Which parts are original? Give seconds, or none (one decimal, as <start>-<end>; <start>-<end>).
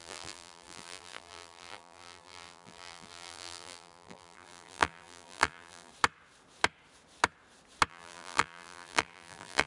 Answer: 5.9-7.9